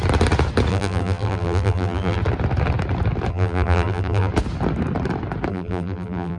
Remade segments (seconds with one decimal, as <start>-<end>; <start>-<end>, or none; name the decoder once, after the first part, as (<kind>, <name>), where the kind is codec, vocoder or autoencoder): 0.7-2.2 (vocoder, BigVGAN v2); 3.3-4.3; 5.5-6.4